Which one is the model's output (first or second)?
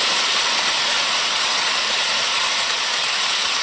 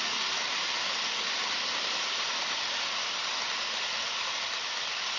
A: first